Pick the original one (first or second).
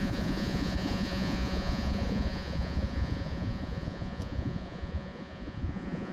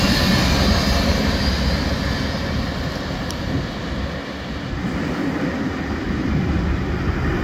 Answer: second